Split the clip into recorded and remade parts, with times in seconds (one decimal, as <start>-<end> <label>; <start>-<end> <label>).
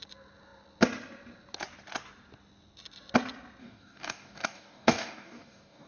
0.0-3.6 recorded; 3.6-5.9 remade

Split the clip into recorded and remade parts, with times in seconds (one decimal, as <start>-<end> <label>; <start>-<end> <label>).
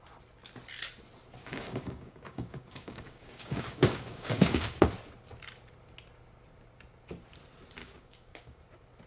0.0-1.4 recorded; 1.4-4.9 remade; 4.9-7.8 recorded; 7.8-8.6 remade; 8.6-9.1 recorded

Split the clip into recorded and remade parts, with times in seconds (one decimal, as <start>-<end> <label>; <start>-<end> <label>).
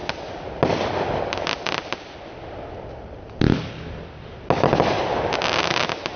0.0-6.2 recorded